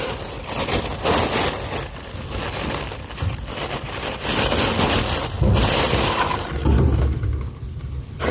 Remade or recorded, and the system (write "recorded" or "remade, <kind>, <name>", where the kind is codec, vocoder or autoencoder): recorded